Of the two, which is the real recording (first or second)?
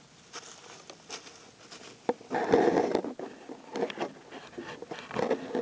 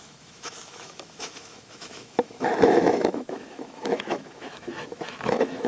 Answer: first